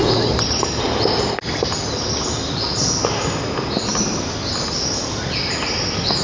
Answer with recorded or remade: recorded